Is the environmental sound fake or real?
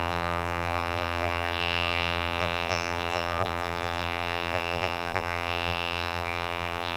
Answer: fake